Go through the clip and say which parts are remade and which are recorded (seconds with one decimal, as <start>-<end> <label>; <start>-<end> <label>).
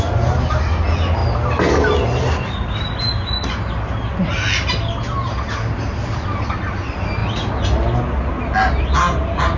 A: 0.0-9.6 recorded